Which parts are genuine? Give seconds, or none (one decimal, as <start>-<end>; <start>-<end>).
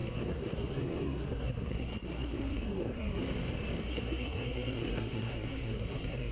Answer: 3.2-3.8